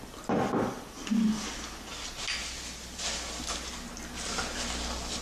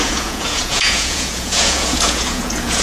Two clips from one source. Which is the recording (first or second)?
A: first